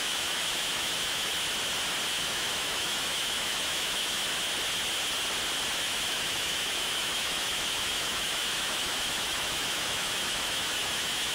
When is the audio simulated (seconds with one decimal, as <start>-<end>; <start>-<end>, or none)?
0.0-1.3; 2.1-4.2; 5.8-11.3